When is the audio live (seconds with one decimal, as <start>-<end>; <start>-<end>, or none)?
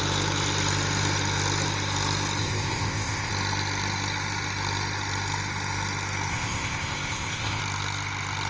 0.0-2.4; 3.3-6.3; 7.6-8.5